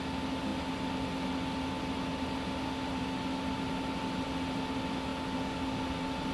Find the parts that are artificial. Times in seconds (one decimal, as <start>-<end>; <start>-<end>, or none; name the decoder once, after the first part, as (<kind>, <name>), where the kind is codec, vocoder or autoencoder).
none